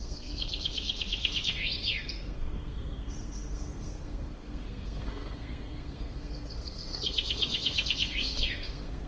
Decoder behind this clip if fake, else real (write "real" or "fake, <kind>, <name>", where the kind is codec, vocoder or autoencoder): fake, codec, SNAC